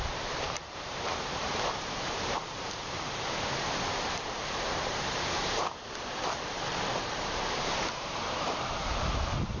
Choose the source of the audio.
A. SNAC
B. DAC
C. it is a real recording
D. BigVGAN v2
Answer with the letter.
D